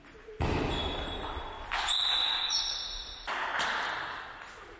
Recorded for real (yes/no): yes